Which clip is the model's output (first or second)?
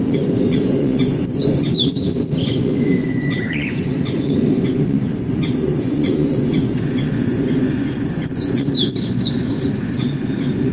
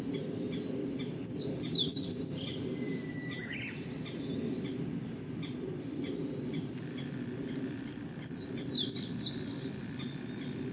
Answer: first